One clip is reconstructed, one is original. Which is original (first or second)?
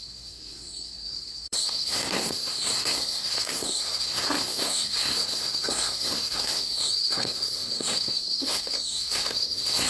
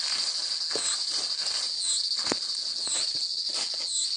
second